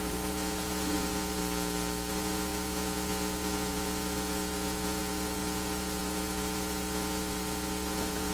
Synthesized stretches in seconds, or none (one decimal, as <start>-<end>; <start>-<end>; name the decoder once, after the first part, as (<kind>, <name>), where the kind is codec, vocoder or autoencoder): 0.0-1.4 (vocoder, Vocos); 2.1-8.3